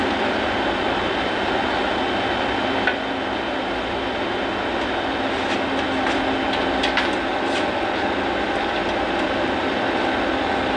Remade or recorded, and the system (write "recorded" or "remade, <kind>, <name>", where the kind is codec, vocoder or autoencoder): recorded